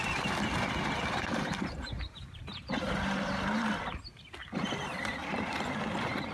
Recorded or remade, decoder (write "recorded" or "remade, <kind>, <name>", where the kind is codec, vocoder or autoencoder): remade, vocoder, BigVGAN v2